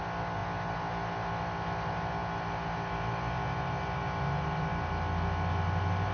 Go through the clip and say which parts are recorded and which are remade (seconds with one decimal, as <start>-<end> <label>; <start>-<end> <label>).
0.0-6.1 recorded